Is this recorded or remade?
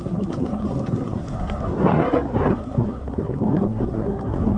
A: remade